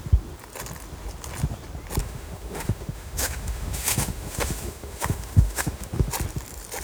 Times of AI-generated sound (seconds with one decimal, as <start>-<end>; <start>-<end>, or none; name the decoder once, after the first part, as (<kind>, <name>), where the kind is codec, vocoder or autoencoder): 2.0-6.1 (autoencoder, DAC-VAE)